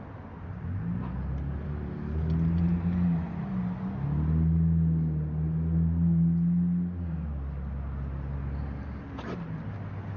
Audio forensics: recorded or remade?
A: recorded